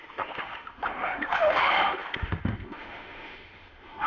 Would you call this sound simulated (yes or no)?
yes